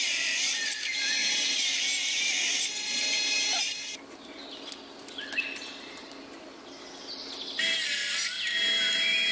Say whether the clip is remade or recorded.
recorded